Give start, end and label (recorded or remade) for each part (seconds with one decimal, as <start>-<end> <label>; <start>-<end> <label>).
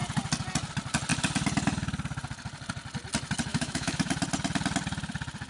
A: 0.0-3.5 recorded; 3.5-4.1 remade; 4.1-5.5 recorded